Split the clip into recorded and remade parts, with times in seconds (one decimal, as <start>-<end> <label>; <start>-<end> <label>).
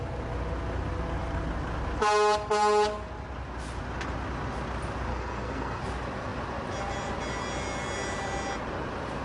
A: 0.0-5.1 recorded; 5.1-5.8 remade; 5.8-9.2 recorded